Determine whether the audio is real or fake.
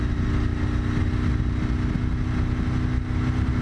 real